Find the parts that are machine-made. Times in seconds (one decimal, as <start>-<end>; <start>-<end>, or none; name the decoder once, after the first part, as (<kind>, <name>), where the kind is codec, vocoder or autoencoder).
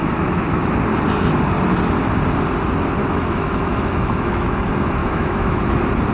0.0-0.6 (autoencoder, DAC-VAE); 3.0-4.6; 5.0-5.6